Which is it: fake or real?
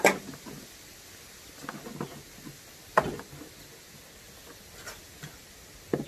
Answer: real